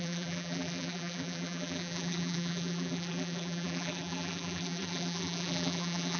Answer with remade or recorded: remade